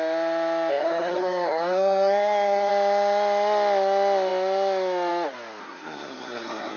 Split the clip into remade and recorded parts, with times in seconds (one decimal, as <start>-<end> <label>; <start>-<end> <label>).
0.0-0.7 recorded; 0.7-2.7 remade; 2.7-5.6 recorded; 5.6-6.8 remade